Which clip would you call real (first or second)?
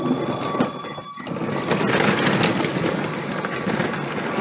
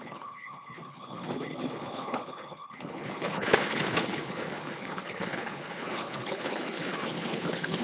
first